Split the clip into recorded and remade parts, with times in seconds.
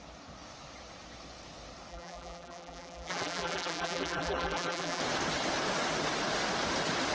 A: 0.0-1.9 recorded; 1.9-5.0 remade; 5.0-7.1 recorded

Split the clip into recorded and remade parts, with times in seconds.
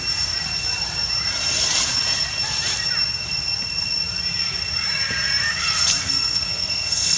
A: 0.0-6.0 recorded; 6.0-7.2 remade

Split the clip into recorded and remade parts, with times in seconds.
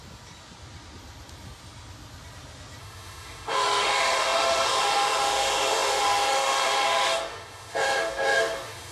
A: 0.0-2.8 recorded; 2.8-8.9 remade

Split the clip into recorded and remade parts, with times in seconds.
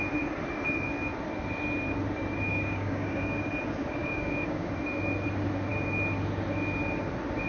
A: 0.0-2.5 recorded; 2.5-3.5 remade; 3.5-4.0 recorded; 4.0-4.7 remade; 4.7-7.5 recorded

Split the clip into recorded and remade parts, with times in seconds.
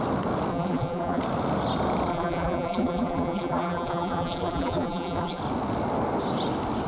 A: 0.0-0.5 recorded; 0.5-1.2 remade; 1.2-2.1 recorded; 2.1-5.4 remade; 5.4-6.9 recorded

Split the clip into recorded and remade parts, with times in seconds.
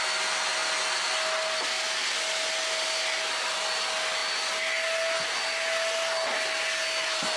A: 0.0-7.4 recorded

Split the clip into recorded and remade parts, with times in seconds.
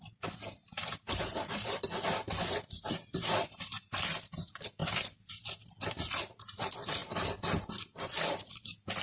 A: 0.0-7.0 remade; 7.0-7.6 recorded; 7.6-9.0 remade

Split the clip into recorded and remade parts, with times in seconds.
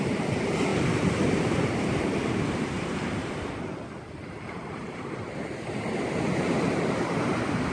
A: 0.0-7.7 recorded